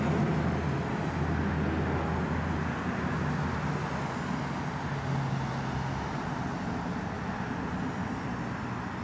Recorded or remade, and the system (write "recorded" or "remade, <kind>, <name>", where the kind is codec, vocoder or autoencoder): recorded